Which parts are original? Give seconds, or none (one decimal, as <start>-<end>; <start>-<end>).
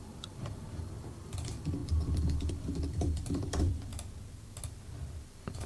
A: 3.9-5.2